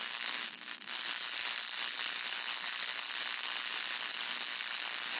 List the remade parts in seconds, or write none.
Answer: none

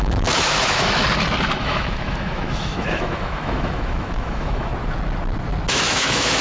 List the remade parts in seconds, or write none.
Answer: 0.0-1.0 (autoencoder, DAC-VAE); 1.6-4.7; 5.7-6.4

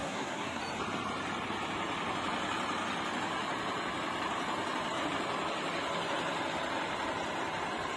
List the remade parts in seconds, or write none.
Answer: 0.0-0.6 (codec, SNAC)

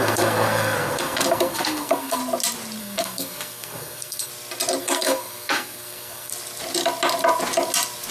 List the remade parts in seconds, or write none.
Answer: 0.0-2.2 (codec, SNAC); 2.8-4.3; 4.8-6.3